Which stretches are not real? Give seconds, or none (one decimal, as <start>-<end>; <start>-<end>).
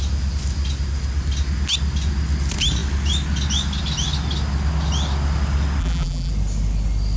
5.8-6.3